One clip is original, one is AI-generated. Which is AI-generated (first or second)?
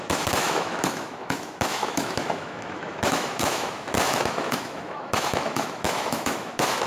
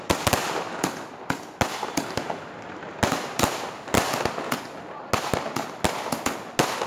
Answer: first